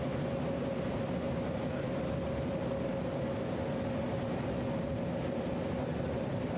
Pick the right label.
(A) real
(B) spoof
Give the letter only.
A